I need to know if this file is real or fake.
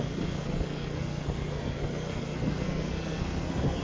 fake